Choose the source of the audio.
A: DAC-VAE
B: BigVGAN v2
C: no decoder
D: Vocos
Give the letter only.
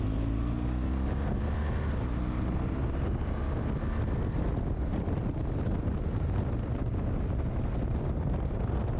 C